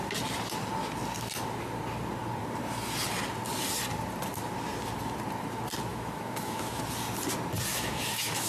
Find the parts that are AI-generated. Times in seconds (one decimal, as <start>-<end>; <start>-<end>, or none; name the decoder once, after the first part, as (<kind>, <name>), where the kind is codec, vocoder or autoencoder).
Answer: 5.9-6.8 (autoencoder, DAC-VAE); 7.7-8.5